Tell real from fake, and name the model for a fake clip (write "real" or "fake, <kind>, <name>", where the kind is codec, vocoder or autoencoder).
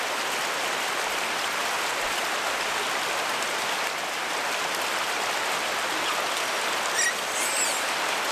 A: real